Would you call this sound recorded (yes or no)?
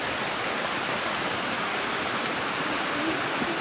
yes